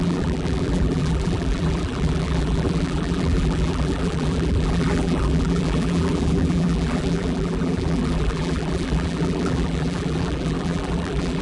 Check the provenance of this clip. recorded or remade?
remade